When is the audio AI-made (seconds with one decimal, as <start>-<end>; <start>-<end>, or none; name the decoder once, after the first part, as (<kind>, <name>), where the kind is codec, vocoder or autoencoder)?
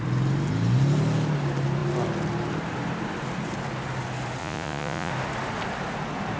4.4-5.1 (vocoder, Vocos)